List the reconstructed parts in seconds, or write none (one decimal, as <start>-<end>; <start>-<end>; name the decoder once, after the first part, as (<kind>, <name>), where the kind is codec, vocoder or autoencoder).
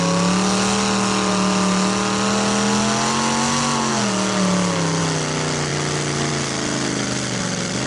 none